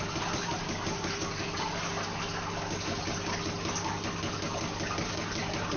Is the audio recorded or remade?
recorded